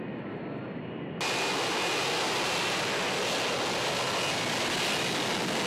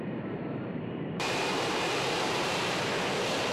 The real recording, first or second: first